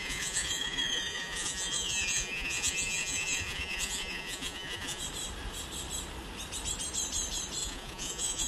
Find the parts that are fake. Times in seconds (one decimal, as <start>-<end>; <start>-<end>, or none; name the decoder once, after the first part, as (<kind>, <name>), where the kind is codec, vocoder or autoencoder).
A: 0.0-5.0 (vocoder, Vocos); 7.6-8.5